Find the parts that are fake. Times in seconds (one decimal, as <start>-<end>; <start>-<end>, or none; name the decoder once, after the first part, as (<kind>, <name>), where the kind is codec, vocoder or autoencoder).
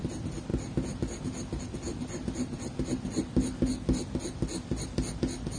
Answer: none